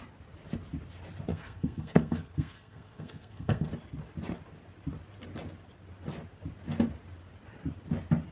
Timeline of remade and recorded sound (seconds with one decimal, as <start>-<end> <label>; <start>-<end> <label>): 0.0-1.3 recorded; 1.3-3.7 remade; 3.7-8.3 recorded